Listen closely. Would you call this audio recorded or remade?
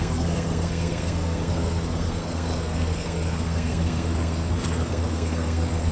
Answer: remade